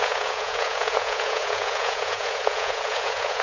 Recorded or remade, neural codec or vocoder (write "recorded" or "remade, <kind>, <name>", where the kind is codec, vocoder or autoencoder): remade, vocoder, Vocos